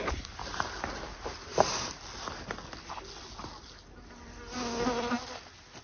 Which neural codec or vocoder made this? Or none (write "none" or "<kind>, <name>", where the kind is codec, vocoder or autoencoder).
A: none